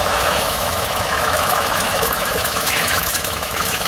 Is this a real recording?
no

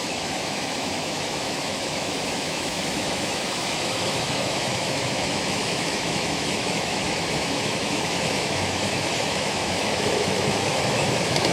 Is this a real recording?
no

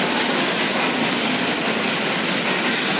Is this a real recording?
yes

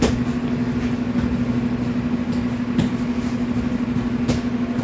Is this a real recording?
yes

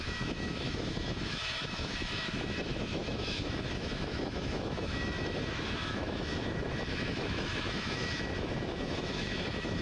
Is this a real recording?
no